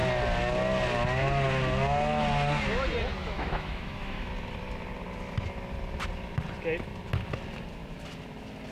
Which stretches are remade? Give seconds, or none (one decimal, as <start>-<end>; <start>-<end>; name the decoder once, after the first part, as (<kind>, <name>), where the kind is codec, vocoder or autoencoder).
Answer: 3.2-4.3 (autoencoder, DAC-VAE)